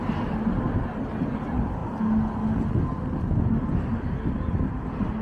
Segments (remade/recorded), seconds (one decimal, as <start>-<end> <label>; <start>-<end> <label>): 0.0-5.2 recorded